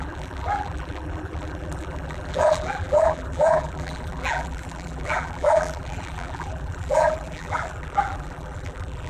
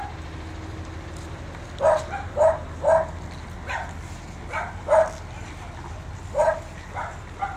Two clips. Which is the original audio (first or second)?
second